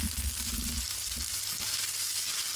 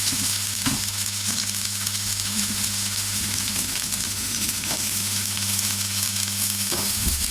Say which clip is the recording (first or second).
first